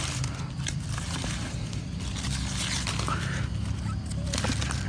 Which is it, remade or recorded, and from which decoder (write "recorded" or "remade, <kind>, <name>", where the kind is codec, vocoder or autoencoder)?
recorded